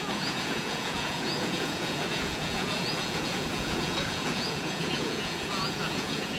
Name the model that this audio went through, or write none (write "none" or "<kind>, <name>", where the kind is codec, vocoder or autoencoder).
vocoder, Vocos